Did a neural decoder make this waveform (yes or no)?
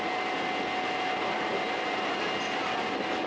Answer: no